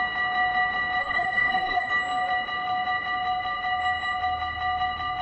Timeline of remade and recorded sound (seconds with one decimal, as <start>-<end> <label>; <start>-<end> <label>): 0.0-1.0 recorded; 1.0-1.9 remade; 1.9-5.2 recorded